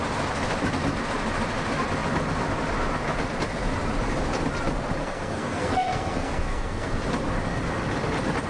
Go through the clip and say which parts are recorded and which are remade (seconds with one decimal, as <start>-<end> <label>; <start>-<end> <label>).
0.0-5.0 recorded; 5.0-7.0 remade; 7.0-8.5 recorded